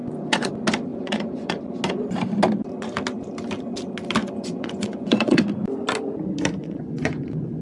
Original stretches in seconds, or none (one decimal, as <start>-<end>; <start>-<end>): 0.5-0.9; 1.6-4.2; 5.4-6.6